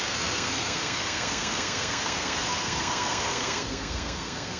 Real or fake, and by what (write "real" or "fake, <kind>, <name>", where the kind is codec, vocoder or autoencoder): fake, codec, SNAC